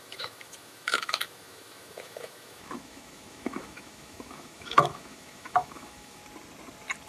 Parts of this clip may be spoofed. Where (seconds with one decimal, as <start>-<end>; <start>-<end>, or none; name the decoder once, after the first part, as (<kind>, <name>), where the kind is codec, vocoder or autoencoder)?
0.0-6.2 (autoencoder, DAC-VAE)